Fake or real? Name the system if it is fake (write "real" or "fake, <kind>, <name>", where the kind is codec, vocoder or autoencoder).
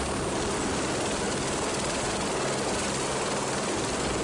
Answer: real